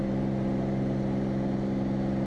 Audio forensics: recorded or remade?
recorded